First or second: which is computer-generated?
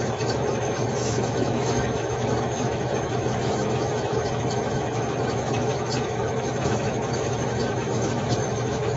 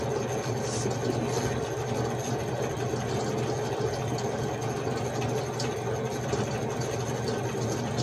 first